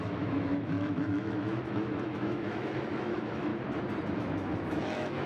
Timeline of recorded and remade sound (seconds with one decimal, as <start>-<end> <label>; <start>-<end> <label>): 0.0-3.5 remade; 3.5-4.1 recorded; 4.1-5.3 remade

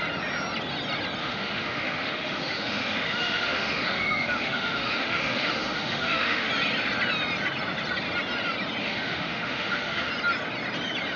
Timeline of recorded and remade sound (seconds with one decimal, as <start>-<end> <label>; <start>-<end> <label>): 0.0-1.2 recorded; 1.2-6.5 remade; 6.5-8.8 recorded; 8.8-10.1 remade; 10.1-11.2 recorded

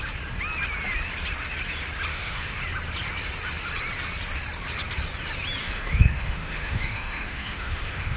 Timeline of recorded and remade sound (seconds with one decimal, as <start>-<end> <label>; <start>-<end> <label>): 0.0-2.1 recorded; 2.1-2.6 remade; 2.6-5.6 recorded; 5.6-8.2 remade

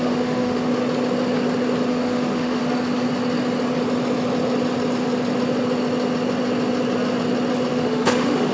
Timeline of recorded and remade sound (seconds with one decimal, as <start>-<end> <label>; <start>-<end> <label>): 0.0-0.7 remade; 0.7-1.9 recorded; 1.9-2.6 remade; 2.6-7.7 recorded; 7.7-8.5 remade